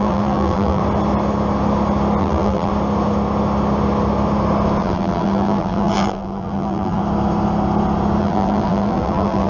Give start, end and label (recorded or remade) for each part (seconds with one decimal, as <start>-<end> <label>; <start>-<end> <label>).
0.0-0.8 remade; 0.8-2.2 recorded; 2.2-2.7 remade; 2.7-4.8 recorded; 4.8-7.0 remade; 7.0-8.2 recorded; 8.2-9.5 remade